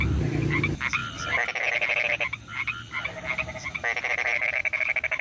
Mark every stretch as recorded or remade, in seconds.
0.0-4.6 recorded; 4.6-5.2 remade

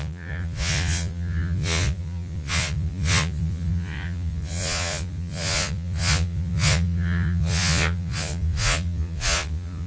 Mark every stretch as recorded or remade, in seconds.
0.0-9.9 remade

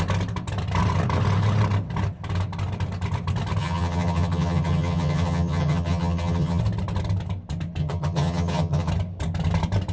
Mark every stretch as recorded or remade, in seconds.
0.0-3.6 recorded; 3.6-6.6 remade; 6.6-7.8 recorded; 7.8-8.9 remade; 8.9-9.9 recorded

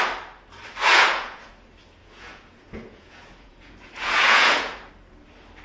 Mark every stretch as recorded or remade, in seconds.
0.0-0.9 recorded; 0.9-1.5 remade; 1.5-2.0 recorded; 2.0-4.9 remade; 4.9-5.6 recorded

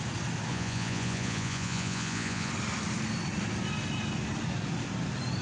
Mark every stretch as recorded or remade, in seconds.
0.0-0.5 recorded; 0.5-2.5 remade; 2.5-5.4 recorded